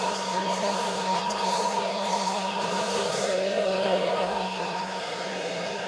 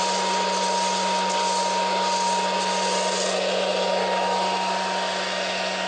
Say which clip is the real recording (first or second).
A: second